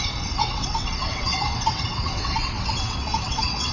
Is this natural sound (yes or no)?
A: no